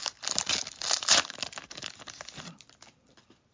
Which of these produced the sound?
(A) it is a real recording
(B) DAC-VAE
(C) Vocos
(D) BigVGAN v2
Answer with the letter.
A